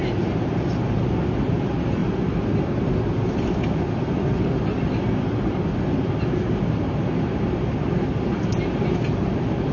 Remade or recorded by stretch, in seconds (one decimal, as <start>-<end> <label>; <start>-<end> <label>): 0.0-9.7 recorded